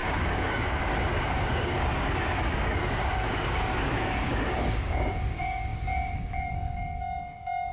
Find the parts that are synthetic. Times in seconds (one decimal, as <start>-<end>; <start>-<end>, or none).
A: 0.0-7.7